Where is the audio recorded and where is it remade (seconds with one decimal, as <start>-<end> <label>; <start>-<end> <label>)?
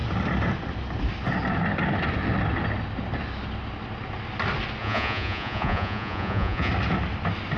0.0-4.8 recorded; 4.8-6.7 remade; 6.7-7.6 recorded